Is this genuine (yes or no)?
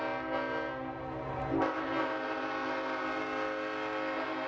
yes